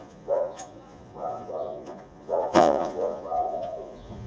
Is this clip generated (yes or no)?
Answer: yes